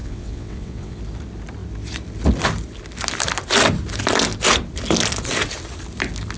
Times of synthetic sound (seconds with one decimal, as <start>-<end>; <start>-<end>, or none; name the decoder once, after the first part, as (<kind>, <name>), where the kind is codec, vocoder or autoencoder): 0.0-1.0 (vocoder, WaveNeXt)